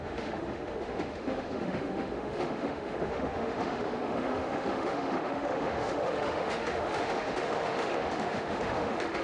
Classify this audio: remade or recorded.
remade